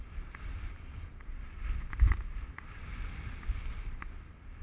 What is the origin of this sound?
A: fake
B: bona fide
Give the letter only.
A